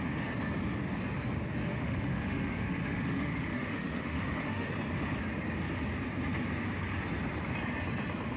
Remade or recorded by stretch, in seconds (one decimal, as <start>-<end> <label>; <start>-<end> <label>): 0.0-1.7 recorded; 1.7-4.7 remade; 4.7-8.4 recorded